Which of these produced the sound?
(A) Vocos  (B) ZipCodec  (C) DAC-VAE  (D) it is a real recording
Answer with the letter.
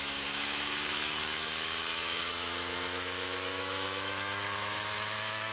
C